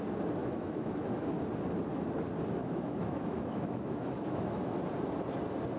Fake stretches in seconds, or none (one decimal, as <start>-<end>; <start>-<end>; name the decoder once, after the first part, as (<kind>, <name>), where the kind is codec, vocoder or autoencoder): 0.4-1.3 (autoencoder, DAC-VAE); 2.6-4.6